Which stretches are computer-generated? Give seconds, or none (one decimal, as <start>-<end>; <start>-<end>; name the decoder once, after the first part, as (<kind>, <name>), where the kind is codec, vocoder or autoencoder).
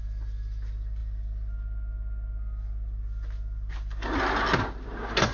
none